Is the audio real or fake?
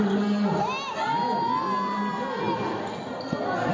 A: real